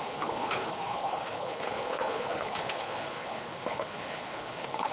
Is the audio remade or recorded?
remade